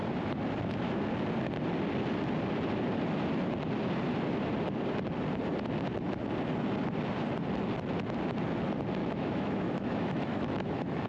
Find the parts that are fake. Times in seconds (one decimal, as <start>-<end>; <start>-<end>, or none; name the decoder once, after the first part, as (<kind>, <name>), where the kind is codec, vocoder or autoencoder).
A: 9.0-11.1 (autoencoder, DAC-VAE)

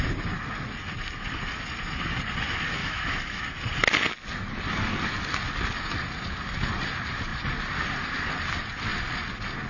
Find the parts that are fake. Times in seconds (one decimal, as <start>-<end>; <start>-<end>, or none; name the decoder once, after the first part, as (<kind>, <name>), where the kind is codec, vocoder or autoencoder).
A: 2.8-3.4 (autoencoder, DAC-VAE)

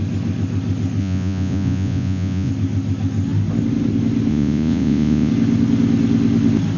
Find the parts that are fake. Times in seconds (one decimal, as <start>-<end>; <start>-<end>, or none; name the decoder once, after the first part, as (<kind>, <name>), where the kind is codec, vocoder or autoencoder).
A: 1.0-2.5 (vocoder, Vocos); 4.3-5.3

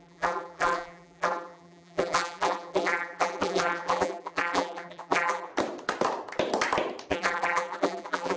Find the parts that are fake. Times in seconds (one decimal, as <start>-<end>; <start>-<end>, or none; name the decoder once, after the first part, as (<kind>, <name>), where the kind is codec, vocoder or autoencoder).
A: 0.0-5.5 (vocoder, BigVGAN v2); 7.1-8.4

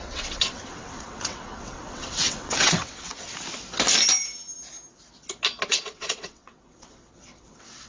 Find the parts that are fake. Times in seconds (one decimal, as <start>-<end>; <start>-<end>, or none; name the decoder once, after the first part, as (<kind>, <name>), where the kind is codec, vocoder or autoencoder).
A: 0.0-3.1 (vocoder, WaveNeXt); 5.7-7.9

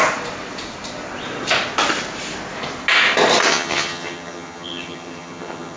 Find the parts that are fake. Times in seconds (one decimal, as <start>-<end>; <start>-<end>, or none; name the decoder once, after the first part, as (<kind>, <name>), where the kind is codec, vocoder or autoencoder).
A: 3.5-5.8 (vocoder, HiFi-GAN)